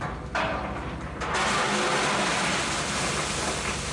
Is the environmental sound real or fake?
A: real